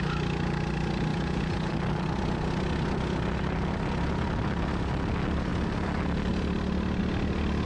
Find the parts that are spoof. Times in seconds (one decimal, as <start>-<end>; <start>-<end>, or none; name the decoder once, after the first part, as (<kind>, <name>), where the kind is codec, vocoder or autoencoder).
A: 1.1-1.7 (vocoder, Vocos)